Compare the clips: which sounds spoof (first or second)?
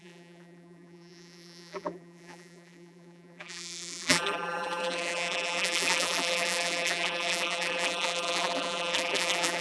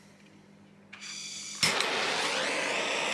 first